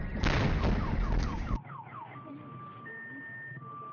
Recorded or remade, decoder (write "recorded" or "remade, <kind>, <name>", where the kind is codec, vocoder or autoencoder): recorded